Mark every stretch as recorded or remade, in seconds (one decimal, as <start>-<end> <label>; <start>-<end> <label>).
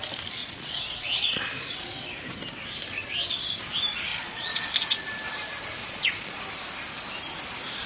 0.0-0.4 recorded; 0.4-1.4 remade; 1.4-4.1 recorded; 4.1-4.7 remade; 4.7-5.8 recorded; 5.8-6.4 remade; 6.4-7.9 recorded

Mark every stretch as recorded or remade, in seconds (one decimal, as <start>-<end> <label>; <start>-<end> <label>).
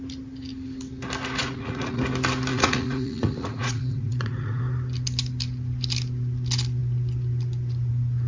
0.0-1.4 recorded; 1.4-2.0 remade; 2.0-2.5 recorded; 2.5-4.6 remade; 4.6-8.3 recorded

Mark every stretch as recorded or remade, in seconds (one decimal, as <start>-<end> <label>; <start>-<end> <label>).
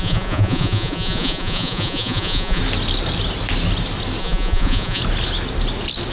0.0-2.6 remade; 2.6-4.2 recorded; 4.2-5.0 remade; 5.0-6.1 recorded